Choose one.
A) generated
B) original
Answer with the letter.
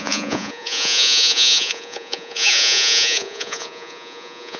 A